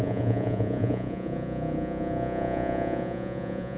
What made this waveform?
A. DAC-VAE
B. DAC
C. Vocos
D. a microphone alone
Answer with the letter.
C